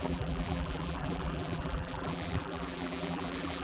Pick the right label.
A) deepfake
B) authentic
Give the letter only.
A